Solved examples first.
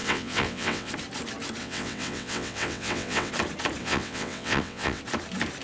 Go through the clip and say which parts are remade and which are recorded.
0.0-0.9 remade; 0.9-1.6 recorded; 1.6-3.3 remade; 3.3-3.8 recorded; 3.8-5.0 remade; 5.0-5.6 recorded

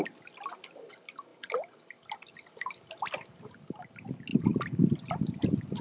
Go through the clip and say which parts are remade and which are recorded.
0.0-1.3 recorded; 1.3-2.5 remade; 2.5-5.8 recorded

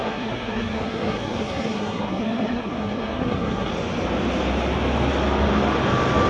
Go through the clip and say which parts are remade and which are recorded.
0.0-3.7 remade; 3.7-6.3 recorded

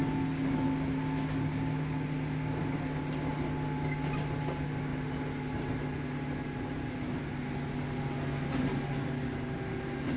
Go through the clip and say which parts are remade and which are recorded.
0.0-10.2 recorded

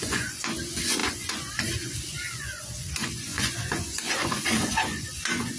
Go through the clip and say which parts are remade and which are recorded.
0.0-5.6 remade

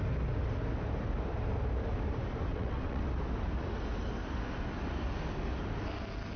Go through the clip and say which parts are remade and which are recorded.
0.0-2.5 recorded; 2.5-3.0 remade; 3.0-6.4 recorded

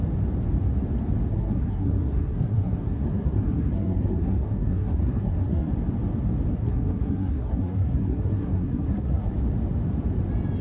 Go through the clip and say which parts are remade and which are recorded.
0.0-1.3 recorded; 1.3-5.7 remade; 5.7-6.5 recorded; 6.5-9.3 remade; 9.3-10.6 recorded

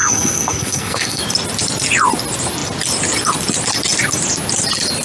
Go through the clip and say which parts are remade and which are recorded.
0.0-1.2 remade; 1.2-5.0 recorded